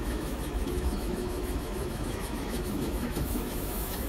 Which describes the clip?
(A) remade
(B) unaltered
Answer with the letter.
A